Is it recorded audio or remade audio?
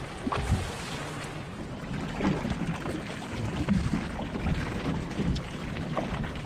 recorded